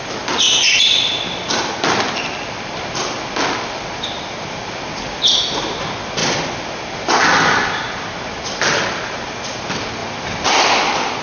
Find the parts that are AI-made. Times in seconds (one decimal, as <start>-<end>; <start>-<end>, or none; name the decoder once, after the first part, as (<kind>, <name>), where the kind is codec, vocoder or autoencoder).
none